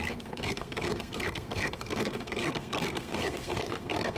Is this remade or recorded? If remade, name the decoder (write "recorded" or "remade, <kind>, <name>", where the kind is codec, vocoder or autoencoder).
remade, codec, SNAC